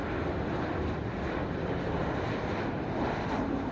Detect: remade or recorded recorded